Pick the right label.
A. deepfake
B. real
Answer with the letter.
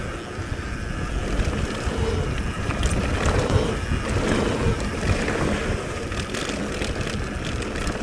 B